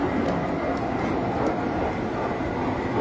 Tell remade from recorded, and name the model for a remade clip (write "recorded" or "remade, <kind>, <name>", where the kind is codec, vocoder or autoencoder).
recorded